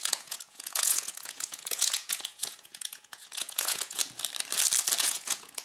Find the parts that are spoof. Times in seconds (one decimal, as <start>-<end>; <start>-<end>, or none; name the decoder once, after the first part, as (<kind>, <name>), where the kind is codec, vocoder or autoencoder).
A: 0.0-4.0 (vocoder, Vocos); 5.0-5.6